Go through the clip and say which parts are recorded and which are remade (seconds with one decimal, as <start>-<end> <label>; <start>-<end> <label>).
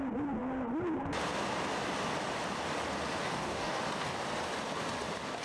0.0-3.2 recorded; 3.2-3.8 remade; 3.8-5.4 recorded